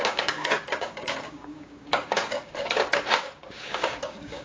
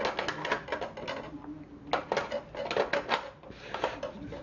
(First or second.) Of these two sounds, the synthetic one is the first